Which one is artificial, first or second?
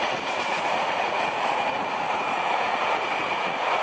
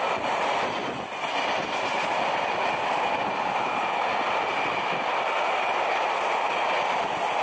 first